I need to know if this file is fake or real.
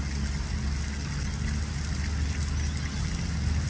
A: real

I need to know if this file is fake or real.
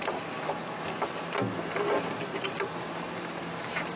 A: fake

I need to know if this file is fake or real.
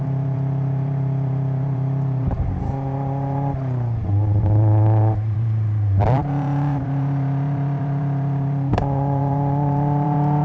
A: fake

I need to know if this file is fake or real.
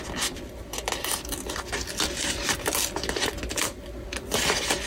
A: real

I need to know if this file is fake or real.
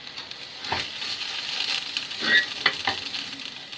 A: real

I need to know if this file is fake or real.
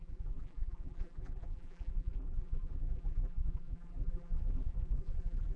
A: fake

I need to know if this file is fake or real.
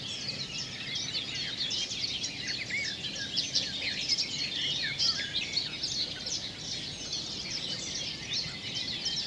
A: real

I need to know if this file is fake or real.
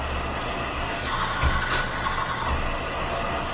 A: real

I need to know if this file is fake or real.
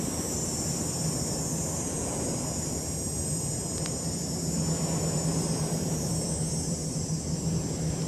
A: fake